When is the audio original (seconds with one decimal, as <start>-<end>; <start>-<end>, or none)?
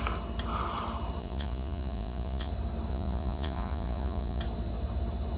0.0-1.2; 2.5-2.9; 4.4-5.4